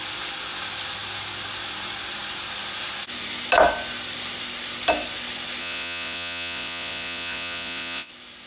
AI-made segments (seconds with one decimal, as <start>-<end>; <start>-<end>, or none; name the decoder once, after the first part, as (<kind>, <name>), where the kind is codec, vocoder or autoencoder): 5.6-8.1 (vocoder, Vocos)